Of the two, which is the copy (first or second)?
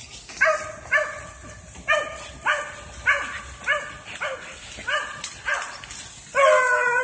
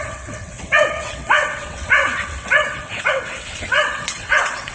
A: second